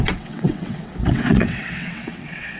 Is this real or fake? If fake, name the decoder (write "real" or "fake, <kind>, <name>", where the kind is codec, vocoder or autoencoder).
fake, vocoder, WaveNeXt